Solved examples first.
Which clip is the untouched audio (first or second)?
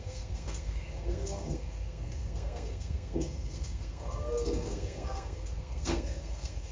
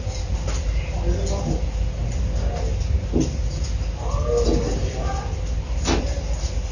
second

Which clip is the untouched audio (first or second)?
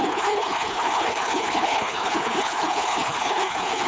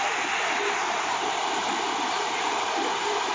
second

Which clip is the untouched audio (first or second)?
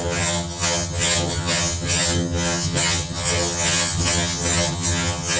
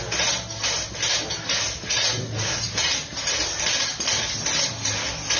second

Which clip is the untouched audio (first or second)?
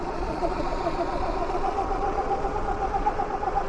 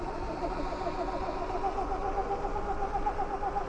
second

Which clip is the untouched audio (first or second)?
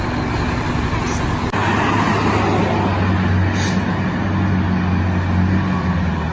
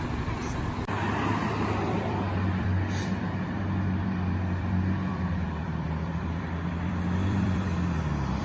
first